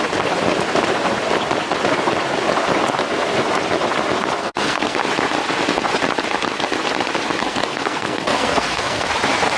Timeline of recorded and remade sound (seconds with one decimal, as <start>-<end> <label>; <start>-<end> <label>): 0.0-4.4 recorded; 4.4-5.0 remade; 5.0-7.4 recorded; 7.4-9.1 remade; 9.1-9.6 recorded